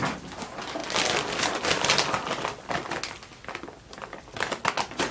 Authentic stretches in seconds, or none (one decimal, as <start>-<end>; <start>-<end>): 0.0-5.1